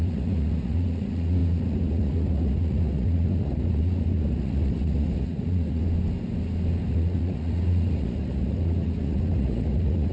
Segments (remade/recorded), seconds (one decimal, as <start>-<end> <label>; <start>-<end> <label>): 0.0-5.8 remade; 5.8-6.9 recorded; 6.9-10.1 remade